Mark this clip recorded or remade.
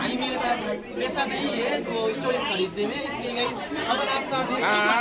remade